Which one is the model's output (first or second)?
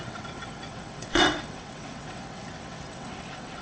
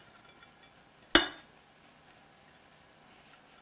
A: first